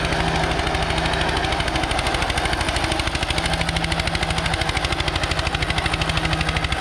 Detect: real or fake real